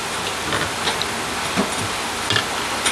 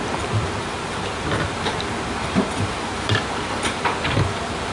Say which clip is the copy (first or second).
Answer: second